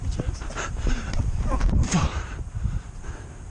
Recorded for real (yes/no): no